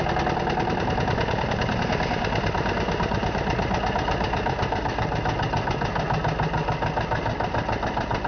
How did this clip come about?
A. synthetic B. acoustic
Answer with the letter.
B